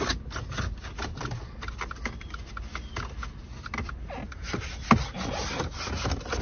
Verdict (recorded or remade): recorded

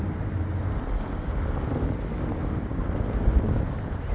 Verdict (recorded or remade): recorded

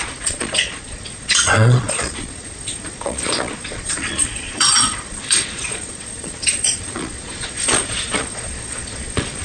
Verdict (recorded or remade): remade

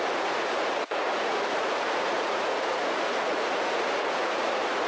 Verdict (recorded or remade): remade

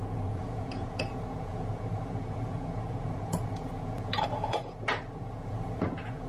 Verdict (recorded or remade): remade